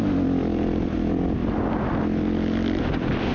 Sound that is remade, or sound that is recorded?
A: recorded